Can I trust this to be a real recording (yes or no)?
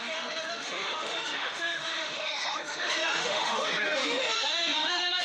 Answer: no